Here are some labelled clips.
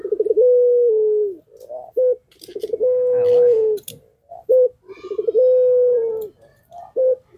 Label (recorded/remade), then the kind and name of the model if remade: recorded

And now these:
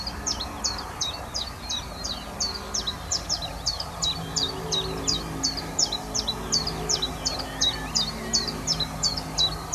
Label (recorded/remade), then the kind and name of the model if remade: recorded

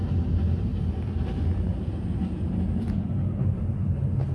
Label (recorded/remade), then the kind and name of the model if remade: recorded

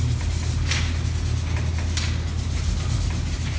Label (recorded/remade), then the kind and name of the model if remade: recorded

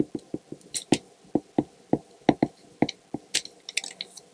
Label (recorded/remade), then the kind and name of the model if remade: recorded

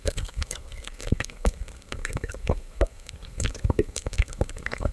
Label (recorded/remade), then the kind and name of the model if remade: remade, codec, SNAC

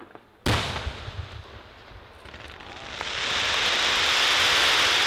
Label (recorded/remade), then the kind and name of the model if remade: recorded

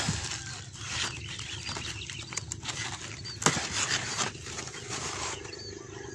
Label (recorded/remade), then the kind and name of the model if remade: recorded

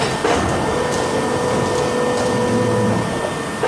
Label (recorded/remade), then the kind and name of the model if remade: recorded